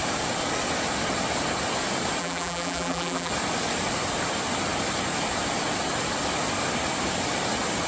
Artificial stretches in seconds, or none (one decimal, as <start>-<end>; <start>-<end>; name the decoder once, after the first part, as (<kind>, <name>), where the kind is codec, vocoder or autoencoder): 2.2-3.3 (vocoder, BigVGAN v2)